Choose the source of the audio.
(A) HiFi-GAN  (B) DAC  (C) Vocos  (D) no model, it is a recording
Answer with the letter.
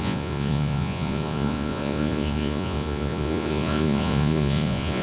C